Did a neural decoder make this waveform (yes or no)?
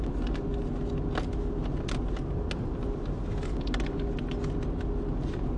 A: no